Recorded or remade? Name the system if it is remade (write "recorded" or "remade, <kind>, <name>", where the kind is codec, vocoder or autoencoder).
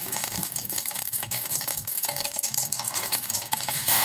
remade, codec, DAC